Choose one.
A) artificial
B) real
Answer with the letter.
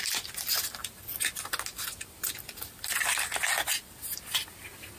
B